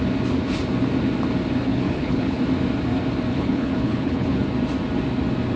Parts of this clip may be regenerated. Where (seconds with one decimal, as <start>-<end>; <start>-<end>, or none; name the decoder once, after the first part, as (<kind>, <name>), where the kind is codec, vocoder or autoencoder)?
1.7-2.4 (codec, HILCodec); 3.3-4.4